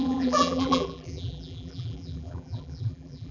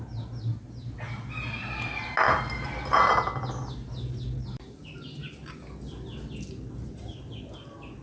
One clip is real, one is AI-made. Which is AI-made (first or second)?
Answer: first